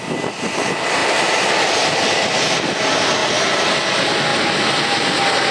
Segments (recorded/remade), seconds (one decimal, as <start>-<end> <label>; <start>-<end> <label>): 0.0-1.0 recorded; 1.0-1.5 remade; 1.5-3.2 recorded; 3.2-3.7 remade; 3.7-5.5 recorded